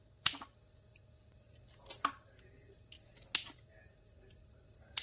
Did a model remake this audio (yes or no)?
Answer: no